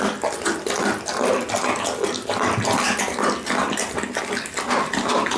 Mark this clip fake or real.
real